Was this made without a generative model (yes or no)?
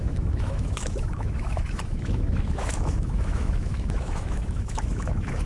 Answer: no